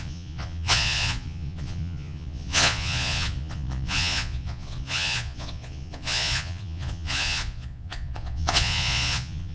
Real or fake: fake